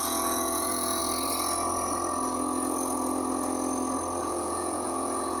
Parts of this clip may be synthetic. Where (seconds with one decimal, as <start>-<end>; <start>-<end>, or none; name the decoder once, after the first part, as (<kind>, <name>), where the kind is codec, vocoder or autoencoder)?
0.0-1.0 (vocoder, Vocos); 4.2-5.4